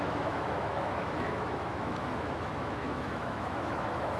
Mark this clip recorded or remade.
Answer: remade